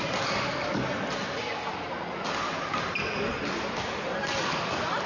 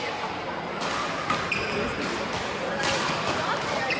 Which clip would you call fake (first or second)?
second